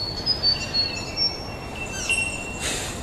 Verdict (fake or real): real